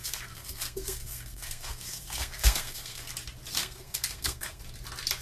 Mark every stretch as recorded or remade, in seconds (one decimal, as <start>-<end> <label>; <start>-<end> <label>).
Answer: 0.0-3.1 remade; 3.1-3.6 recorded; 3.6-4.6 remade; 4.6-5.2 recorded